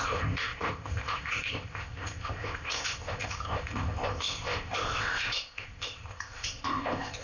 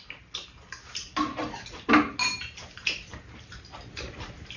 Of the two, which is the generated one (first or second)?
first